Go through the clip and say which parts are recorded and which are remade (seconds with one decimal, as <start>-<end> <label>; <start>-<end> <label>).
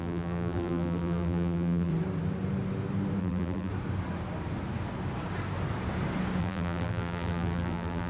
0.0-1.9 remade; 1.9-3.2 recorded; 3.2-3.7 remade; 3.7-6.4 recorded; 6.4-8.1 remade